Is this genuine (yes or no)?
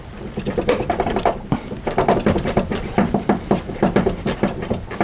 yes